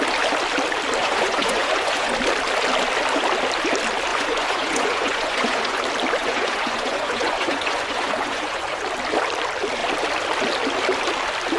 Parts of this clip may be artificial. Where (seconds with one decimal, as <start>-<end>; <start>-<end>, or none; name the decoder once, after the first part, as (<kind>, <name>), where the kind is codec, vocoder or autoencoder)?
1.0-2.1 (vocoder, Vocos); 4.1-5.8; 6.2-8.8